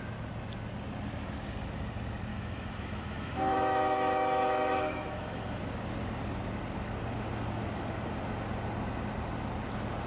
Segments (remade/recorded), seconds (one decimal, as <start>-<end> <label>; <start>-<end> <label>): 0.0-2.3 recorded; 2.3-5.6 remade; 5.6-10.1 recorded